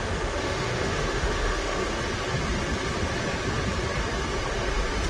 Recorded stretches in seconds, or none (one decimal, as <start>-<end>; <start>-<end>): 1.8-5.1